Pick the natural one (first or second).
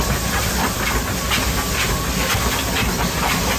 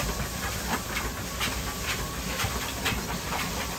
first